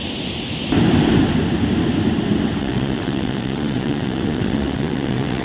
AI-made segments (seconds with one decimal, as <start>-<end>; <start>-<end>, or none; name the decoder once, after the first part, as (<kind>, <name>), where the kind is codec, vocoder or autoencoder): 2.6-5.4 (vocoder, WaveNeXt)